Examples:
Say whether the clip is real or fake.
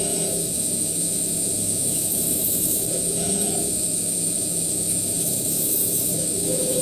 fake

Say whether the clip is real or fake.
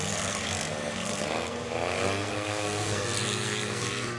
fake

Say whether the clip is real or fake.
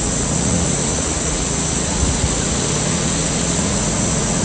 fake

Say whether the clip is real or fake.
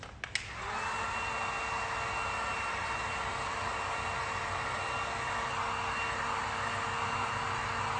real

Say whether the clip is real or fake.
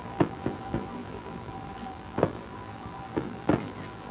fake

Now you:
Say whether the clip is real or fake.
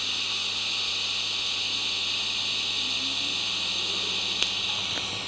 real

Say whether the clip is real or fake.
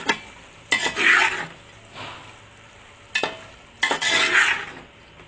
real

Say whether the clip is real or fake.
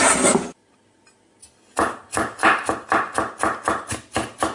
real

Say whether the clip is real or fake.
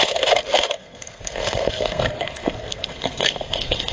fake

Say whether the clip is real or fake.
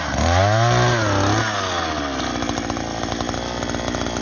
real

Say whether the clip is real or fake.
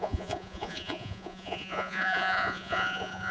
fake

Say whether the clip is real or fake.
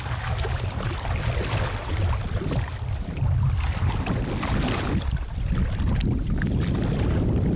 real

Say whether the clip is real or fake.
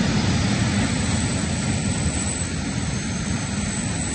real